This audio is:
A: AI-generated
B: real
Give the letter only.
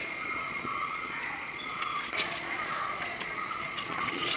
A